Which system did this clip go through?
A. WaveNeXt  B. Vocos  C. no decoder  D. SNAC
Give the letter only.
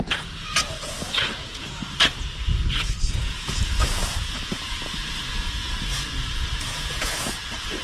B